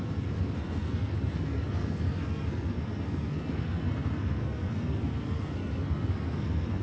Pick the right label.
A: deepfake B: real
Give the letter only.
A